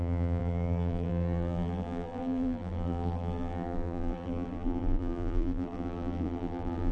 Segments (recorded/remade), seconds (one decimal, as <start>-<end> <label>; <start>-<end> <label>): 0.0-6.9 remade